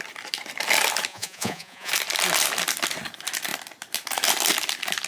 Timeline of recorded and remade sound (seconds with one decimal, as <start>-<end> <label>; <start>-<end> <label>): 0.0-1.1 recorded; 1.1-1.9 remade; 1.9-5.1 recorded